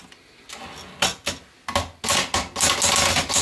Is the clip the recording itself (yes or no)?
yes